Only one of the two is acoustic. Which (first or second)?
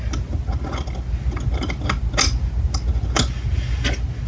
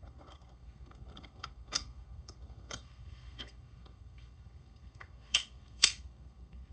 first